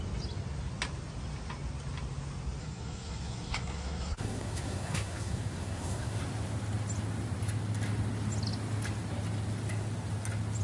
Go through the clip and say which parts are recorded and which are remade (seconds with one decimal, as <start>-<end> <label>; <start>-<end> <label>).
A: 0.0-2.6 recorded; 2.6-6.2 remade; 6.2-10.6 recorded